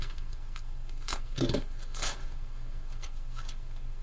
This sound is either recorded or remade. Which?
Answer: remade